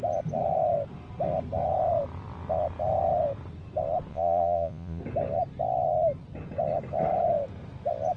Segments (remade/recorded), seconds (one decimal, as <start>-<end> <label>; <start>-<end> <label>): 0.0-4.1 recorded; 4.1-5.0 remade; 5.0-8.2 recorded